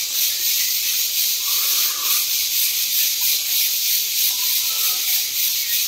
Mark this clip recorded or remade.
recorded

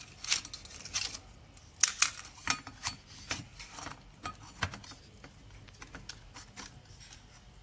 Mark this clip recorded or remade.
recorded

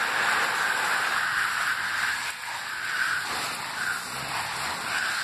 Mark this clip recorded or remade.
recorded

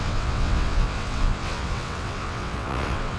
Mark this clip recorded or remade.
remade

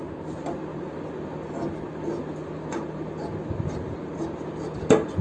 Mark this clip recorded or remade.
recorded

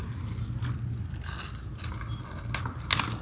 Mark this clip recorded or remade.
recorded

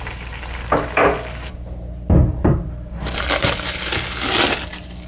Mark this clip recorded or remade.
recorded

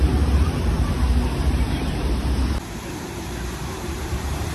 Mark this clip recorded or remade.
remade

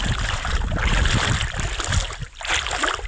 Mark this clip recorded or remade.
recorded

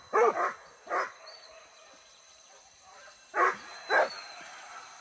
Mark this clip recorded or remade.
recorded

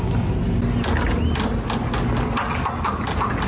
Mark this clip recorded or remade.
recorded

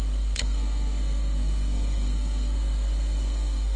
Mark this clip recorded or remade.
remade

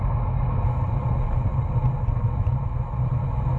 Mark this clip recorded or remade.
recorded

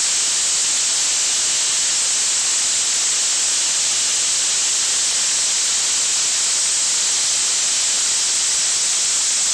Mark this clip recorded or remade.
recorded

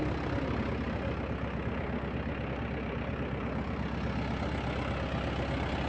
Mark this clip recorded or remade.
recorded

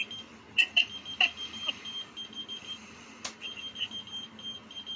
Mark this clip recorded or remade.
recorded